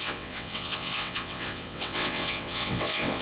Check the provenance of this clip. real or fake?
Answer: fake